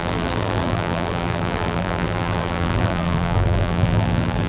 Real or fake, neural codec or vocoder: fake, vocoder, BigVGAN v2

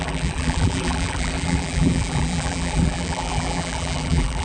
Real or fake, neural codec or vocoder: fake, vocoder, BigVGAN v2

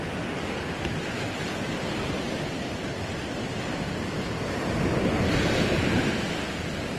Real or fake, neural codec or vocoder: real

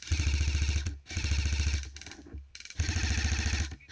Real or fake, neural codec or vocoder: real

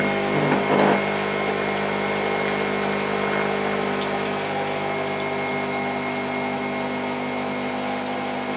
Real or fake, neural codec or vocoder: real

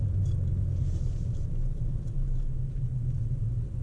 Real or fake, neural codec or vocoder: fake, vocoder, BigVGAN v2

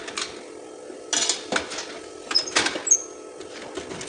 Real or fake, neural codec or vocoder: real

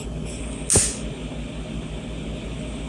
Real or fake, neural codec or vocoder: real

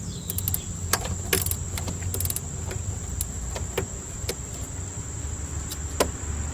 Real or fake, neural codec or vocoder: real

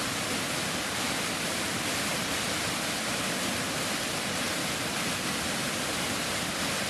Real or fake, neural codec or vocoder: real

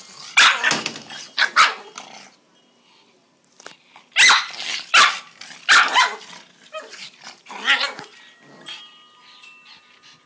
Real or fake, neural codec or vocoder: real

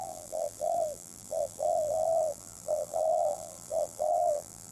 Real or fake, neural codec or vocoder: fake, vocoder, BigVGAN v2